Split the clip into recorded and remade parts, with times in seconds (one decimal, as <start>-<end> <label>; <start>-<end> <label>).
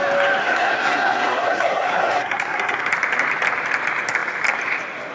0.0-0.4 recorded; 0.4-2.9 remade; 2.9-5.1 recorded